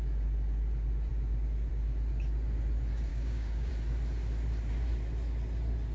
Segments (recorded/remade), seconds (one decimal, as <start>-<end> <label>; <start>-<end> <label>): 0.0-3.1 recorded; 3.1-3.7 remade; 3.7-5.9 recorded